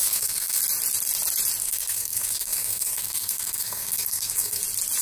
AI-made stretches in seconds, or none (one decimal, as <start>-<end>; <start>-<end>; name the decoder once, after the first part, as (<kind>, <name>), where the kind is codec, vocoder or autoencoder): 0.0-0.6 (codec, SNAC); 1.6-4.6